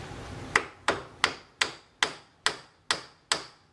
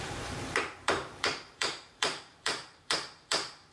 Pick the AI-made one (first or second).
second